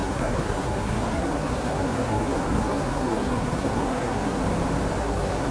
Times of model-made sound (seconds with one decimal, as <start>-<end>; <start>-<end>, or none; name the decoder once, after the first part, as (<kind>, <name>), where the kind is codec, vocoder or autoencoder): 0.0-4.4 (codec, SNAC); 5.0-5.5